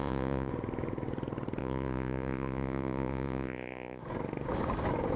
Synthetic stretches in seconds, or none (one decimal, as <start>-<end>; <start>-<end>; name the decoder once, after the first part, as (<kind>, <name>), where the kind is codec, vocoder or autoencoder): 0.0-0.5 (vocoder, Vocos); 1.6-4.0